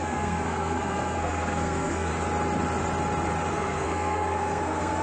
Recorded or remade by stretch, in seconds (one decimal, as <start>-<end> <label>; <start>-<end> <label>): 0.0-2.1 remade; 2.1-3.5 recorded; 3.5-5.0 remade